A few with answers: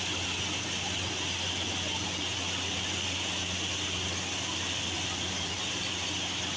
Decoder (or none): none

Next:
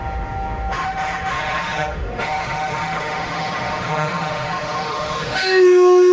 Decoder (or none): autoencoder, DAC-VAE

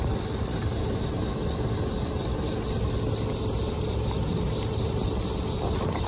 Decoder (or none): none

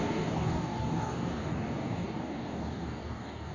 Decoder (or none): codec, DAC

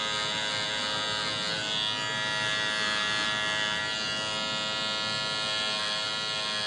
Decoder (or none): none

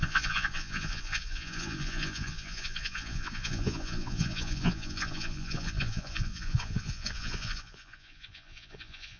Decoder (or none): vocoder, Vocos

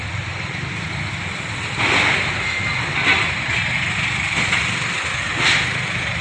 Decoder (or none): none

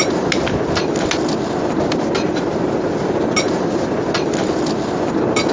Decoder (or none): none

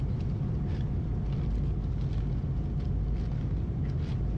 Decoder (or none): none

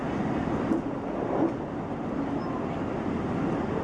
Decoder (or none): none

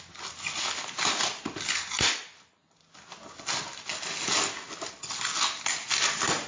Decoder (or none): none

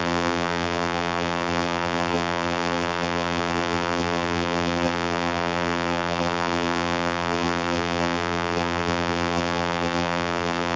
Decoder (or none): vocoder, BigVGAN v2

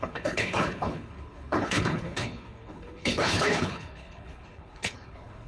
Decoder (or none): codec, HILCodec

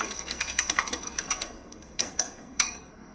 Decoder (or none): codec, SNAC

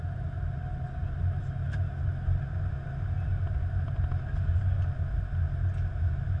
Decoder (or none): none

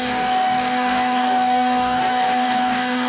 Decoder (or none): codec, DAC